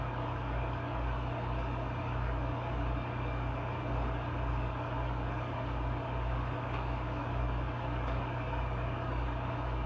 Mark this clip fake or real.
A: fake